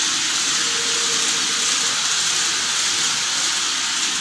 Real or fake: real